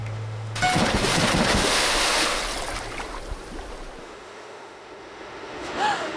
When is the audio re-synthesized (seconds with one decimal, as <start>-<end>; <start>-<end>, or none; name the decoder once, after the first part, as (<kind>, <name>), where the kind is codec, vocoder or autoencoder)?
0.0-0.6 (autoencoder, DAC-VAE); 1.5-2.4; 4.0-6.2